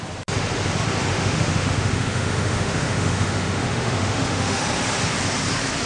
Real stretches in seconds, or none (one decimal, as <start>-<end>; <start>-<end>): 0.0-1.1; 4.6-5.9